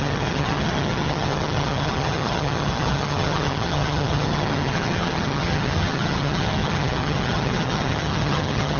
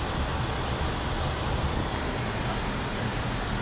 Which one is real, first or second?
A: second